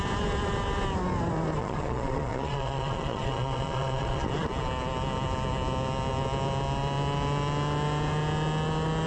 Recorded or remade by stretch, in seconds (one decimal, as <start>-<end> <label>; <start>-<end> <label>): 0.0-1.6 recorded; 1.6-4.3 remade; 4.3-9.1 recorded